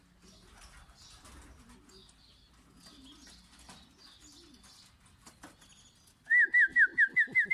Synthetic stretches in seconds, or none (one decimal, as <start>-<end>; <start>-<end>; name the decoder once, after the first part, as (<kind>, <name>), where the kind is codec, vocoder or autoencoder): none